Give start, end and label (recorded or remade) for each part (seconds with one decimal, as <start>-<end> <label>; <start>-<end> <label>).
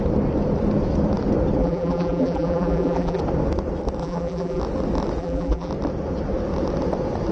0.0-1.6 recorded; 1.6-3.2 remade; 3.2-4.0 recorded; 4.0-4.6 remade; 4.6-5.2 recorded; 5.2-5.7 remade; 5.7-7.3 recorded